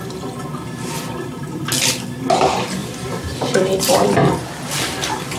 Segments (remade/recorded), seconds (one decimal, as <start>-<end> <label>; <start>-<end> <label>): 0.0-0.5 recorded; 0.5-1.7 remade; 1.7-2.8 recorded; 2.8-4.8 remade; 4.8-5.4 recorded